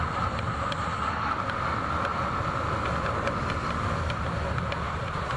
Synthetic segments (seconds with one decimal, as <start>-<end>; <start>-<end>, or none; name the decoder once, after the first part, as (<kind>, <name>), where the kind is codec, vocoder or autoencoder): none